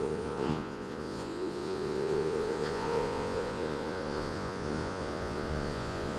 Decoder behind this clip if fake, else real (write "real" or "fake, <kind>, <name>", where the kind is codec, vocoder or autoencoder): fake, vocoder, Vocos